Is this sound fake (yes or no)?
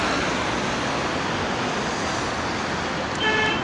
no